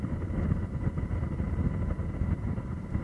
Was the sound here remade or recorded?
remade